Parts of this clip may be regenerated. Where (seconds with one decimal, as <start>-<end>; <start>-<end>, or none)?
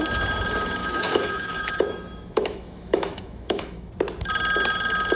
0.8-3.9